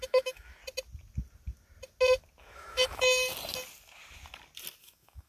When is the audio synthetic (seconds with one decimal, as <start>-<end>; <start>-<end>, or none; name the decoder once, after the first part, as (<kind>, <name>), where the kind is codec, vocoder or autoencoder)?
0.0-0.6 (autoencoder, DAC-VAE); 2.4-3.3; 4.8-5.3